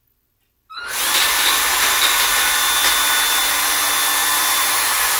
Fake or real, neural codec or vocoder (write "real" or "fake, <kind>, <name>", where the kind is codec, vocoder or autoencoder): real